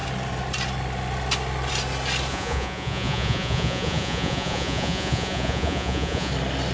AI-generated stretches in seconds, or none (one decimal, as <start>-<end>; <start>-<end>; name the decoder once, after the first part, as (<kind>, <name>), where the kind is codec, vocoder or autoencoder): 2.3-6.3 (vocoder, Vocos)